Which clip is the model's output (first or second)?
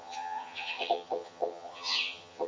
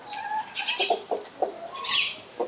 first